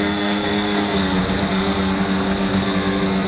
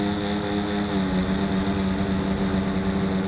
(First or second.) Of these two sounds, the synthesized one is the first